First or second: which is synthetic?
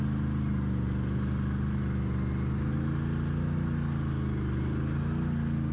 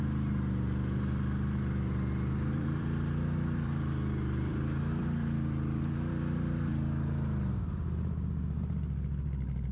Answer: second